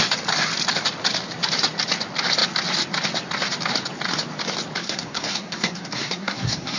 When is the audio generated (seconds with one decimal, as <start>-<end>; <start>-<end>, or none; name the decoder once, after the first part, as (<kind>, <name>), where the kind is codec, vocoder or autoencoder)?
4.8-6.8 (codec, SNAC)